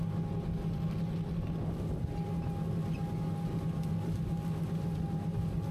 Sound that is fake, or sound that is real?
real